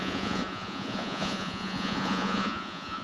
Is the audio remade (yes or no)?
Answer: yes